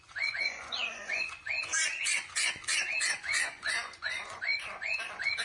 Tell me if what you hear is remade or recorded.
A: remade